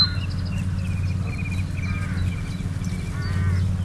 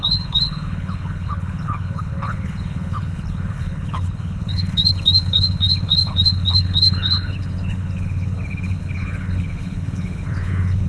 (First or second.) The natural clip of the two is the first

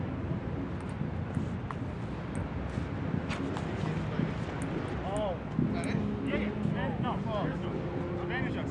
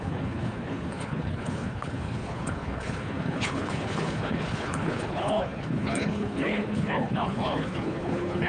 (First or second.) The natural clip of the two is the first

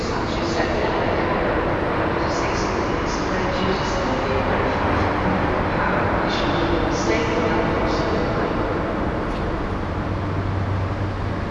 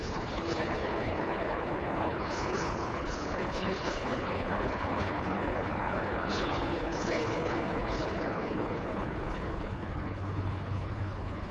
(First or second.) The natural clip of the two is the first